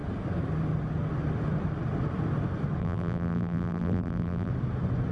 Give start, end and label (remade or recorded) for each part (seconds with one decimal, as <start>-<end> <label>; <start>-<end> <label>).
0.0-2.8 recorded; 2.8-4.5 remade; 4.5-5.1 recorded